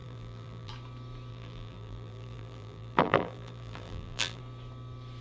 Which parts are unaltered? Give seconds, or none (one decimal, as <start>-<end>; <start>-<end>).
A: 0.7-1.3; 4.4-5.2